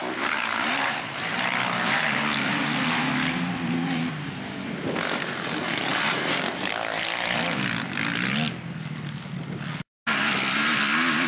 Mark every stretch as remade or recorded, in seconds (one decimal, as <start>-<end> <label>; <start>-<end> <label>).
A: 0.0-2.5 remade; 2.5-5.9 recorded; 5.9-6.7 remade; 6.7-11.3 recorded